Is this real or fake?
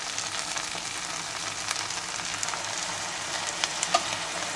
real